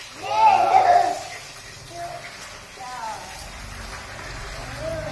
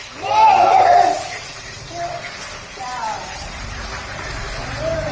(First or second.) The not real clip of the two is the second